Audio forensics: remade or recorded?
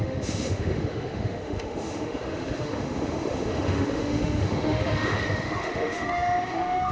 remade